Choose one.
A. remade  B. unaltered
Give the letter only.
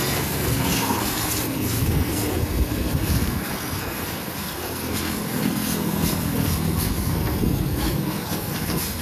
A